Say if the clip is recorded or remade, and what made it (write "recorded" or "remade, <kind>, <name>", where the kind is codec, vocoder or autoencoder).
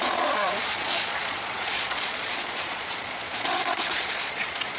remade, vocoder, Vocos